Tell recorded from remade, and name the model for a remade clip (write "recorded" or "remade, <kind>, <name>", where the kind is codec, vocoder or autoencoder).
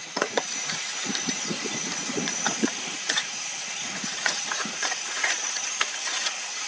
remade, vocoder, Vocos